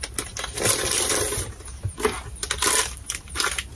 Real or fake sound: real